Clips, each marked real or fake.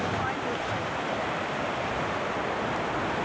real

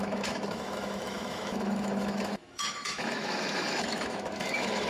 fake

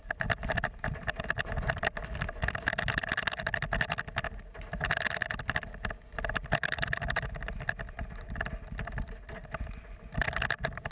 real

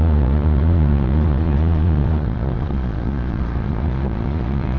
fake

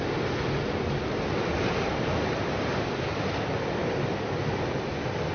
real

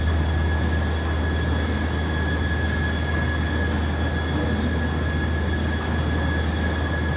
real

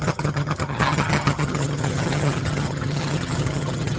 fake